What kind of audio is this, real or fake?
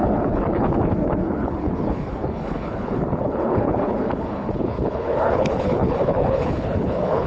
fake